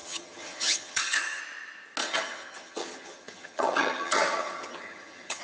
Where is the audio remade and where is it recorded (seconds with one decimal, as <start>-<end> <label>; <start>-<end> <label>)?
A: 0.0-1.4 remade; 1.4-2.0 recorded; 2.0-5.4 remade